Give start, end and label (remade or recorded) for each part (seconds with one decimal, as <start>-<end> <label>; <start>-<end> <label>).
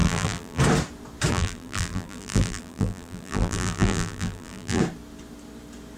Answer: 0.0-0.6 remade; 0.6-1.3 recorded; 1.3-4.8 remade; 4.8-6.0 recorded